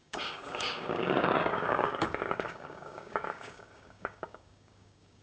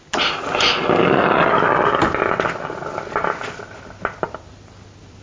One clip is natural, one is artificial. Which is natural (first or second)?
second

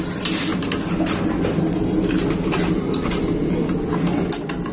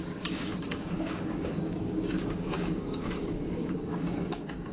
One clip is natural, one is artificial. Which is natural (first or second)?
first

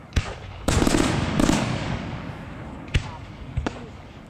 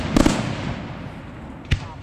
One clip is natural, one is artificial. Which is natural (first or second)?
second